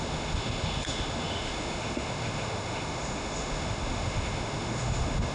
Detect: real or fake fake